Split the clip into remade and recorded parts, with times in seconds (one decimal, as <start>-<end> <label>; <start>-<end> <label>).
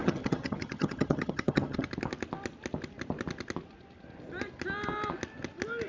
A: 0.0-1.9 remade; 1.9-5.9 recorded